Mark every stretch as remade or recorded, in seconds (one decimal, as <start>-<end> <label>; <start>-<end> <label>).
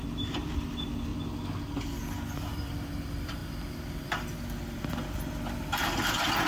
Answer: 0.0-1.1 remade; 1.1-2.5 recorded; 2.5-6.5 remade